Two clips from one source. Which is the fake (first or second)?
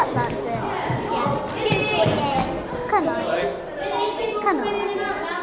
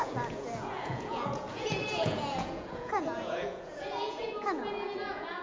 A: second